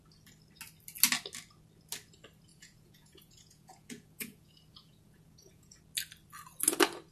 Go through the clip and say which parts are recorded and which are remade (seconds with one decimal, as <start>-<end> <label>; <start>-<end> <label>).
0.0-2.5 recorded; 2.5-5.8 remade; 5.8-7.1 recorded